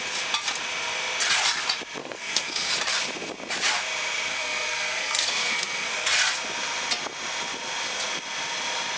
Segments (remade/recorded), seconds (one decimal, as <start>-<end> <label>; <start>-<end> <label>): 0.0-2.0 recorded; 2.0-2.7 remade; 2.7-4.3 recorded; 4.3-5.9 remade; 5.9-9.0 recorded